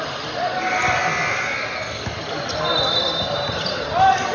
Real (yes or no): yes